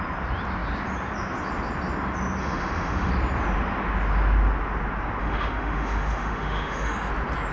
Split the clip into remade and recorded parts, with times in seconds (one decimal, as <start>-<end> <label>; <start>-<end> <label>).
0.0-2.4 recorded; 2.4-3.1 remade; 3.1-5.2 recorded; 5.2-7.1 remade; 7.1-7.5 recorded